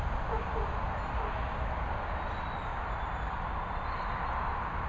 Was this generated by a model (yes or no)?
no